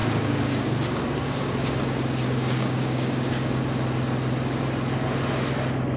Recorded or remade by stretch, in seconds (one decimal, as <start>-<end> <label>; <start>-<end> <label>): 0.0-3.6 remade; 3.6-6.0 recorded